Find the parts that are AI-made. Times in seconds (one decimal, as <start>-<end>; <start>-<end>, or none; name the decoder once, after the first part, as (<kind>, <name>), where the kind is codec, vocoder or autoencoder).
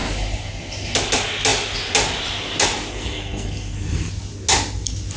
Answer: 2.9-4.1 (codec, SNAC)